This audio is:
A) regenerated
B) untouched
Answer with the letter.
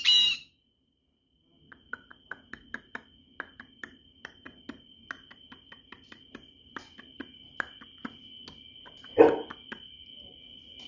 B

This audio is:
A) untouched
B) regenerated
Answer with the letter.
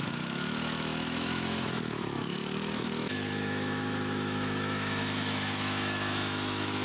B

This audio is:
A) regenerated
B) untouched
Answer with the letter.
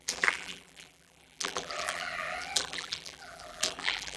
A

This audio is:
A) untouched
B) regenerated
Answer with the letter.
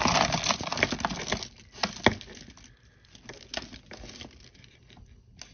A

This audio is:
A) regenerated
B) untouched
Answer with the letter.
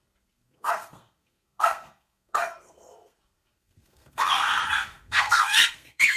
A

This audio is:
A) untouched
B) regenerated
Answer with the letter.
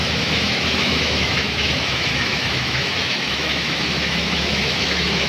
B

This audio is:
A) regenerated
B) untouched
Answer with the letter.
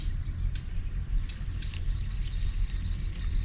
B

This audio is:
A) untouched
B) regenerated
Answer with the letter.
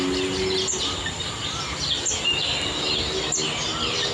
A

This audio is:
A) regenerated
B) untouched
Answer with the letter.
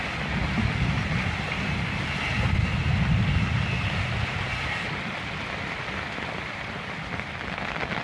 B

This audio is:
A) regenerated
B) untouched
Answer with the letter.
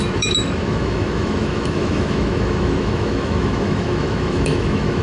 A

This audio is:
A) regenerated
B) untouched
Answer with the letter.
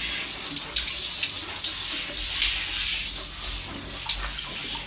B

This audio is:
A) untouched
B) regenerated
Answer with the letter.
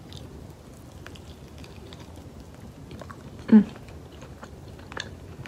B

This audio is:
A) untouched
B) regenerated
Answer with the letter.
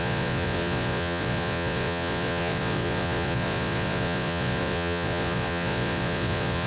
B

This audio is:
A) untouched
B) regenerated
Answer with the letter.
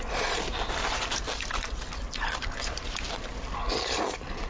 B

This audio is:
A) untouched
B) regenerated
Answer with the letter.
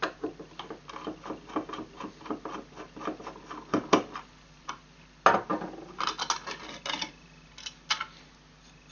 A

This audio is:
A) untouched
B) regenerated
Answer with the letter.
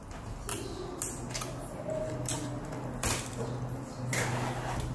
A